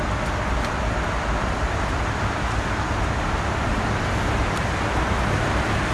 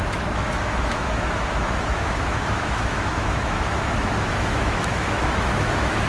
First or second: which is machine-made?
second